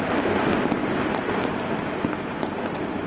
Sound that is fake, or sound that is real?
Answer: real